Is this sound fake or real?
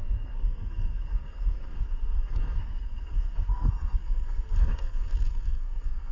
fake